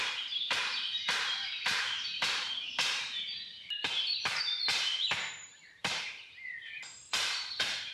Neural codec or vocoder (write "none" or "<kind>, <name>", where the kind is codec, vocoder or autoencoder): vocoder, BigVGAN v2